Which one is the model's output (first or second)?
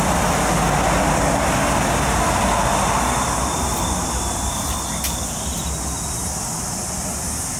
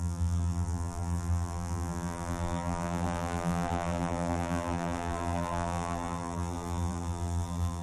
second